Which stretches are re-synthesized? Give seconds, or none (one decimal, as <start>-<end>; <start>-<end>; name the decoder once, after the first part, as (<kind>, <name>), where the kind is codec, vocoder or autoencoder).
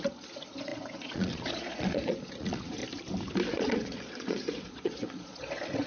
0.0-2.8 (vocoder, Vocos); 3.5-5.9